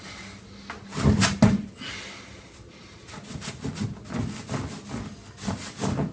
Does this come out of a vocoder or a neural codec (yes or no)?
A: no